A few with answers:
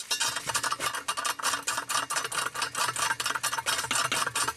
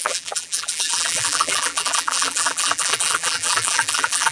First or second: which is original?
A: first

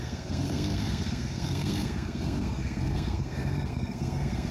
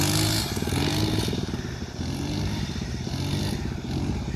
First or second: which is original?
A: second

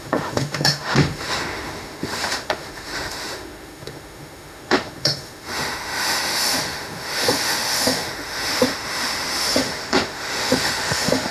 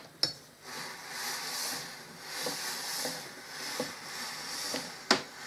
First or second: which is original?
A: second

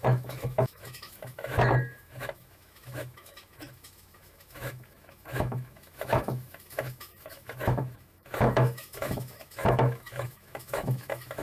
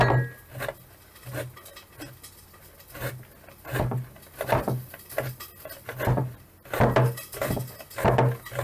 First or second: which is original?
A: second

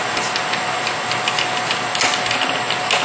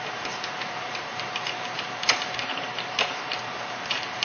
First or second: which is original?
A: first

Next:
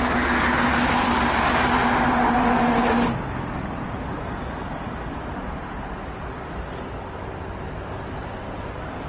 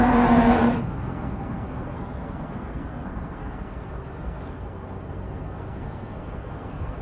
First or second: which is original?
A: first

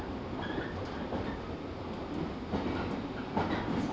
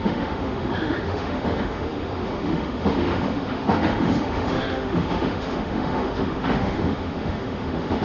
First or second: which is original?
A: first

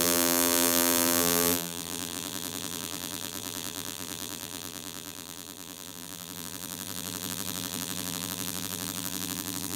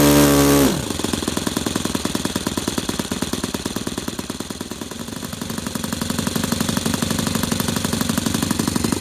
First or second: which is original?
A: second